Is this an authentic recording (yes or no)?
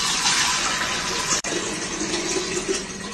no